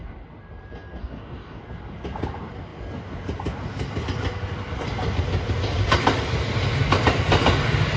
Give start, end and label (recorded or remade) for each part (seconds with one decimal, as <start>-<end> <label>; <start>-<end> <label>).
0.0-1.0 recorded; 1.0-1.6 remade; 1.6-8.0 recorded